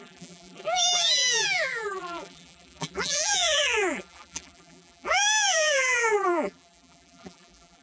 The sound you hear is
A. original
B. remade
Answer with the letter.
B